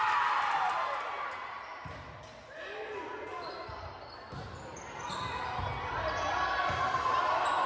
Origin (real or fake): real